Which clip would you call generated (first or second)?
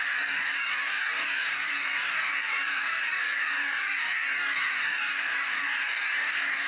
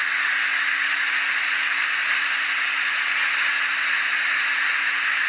first